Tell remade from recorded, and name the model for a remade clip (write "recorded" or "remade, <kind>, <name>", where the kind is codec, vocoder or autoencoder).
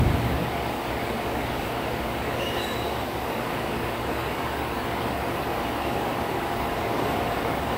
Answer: remade, codec, DAC